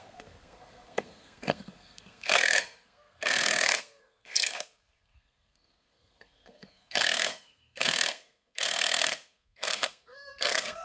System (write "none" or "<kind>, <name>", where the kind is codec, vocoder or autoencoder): codec, SNAC